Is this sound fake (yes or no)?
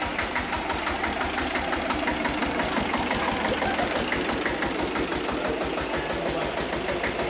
no